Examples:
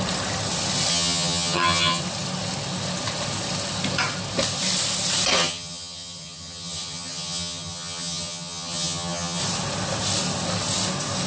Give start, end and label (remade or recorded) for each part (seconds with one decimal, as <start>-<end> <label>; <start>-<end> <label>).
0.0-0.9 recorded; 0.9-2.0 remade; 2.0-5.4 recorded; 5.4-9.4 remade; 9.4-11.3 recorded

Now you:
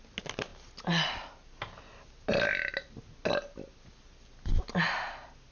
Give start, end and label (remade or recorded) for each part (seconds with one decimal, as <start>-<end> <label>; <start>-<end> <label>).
0.0-5.5 recorded

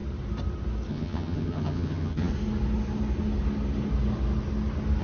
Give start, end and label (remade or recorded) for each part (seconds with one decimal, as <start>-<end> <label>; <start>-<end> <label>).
0.0-0.9 recorded; 0.9-2.3 remade; 2.3-5.0 recorded